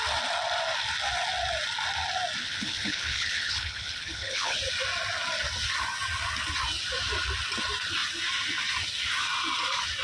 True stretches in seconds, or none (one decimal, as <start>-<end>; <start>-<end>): 0.0-2.4; 4.6-10.0